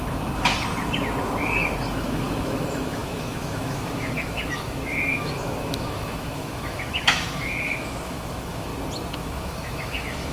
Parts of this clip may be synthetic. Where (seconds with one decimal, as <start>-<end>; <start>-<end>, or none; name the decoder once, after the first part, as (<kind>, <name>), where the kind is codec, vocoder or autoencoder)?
0.0-0.5 (autoencoder, DAC-VAE); 1.9-8.7; 9.2-10.3